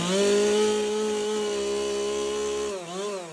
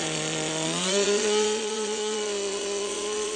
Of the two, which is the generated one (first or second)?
second